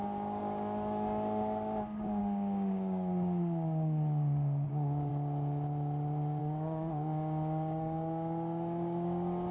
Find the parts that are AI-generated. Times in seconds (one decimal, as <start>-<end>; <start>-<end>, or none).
0.0-5.1; 6.4-9.5